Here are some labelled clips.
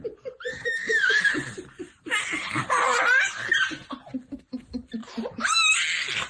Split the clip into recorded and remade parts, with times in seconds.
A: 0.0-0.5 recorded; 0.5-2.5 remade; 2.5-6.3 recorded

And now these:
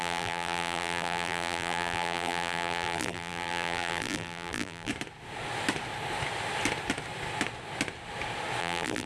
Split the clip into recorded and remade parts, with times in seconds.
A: 0.0-4.9 remade; 4.9-8.6 recorded; 8.6-9.1 remade

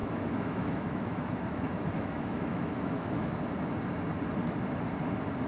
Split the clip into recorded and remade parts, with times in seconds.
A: 0.0-3.3 remade; 3.3-5.5 recorded

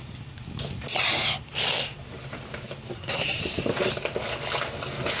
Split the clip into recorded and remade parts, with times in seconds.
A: 0.0-2.9 recorded; 2.9-3.4 remade; 3.4-5.2 recorded

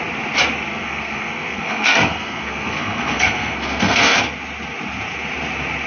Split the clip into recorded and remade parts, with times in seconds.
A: 0.0-0.7 recorded; 0.7-4.2 remade; 4.2-5.9 recorded

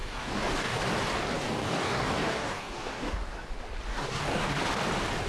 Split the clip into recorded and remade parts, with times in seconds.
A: 0.0-0.8 remade; 0.8-1.4 recorded; 1.4-3.2 remade; 3.2-3.9 recorded; 3.9-4.6 remade; 4.6-5.3 recorded

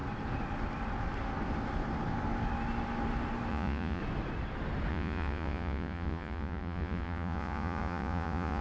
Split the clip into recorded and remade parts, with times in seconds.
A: 0.0-3.5 recorded; 3.5-4.0 remade; 4.0-4.9 recorded; 4.9-8.6 remade